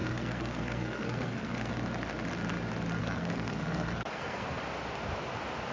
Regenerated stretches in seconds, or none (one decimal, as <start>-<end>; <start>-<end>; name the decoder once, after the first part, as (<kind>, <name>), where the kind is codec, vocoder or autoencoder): 0.0-1.7 (codec, SNAC); 3.0-4.6